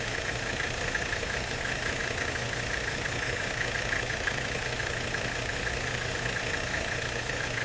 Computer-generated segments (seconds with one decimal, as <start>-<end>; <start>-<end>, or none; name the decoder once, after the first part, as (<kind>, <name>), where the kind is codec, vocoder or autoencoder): 0.0-7.6 (autoencoder, DAC-VAE)